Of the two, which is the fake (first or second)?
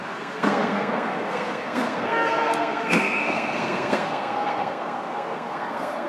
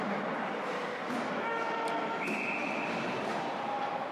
first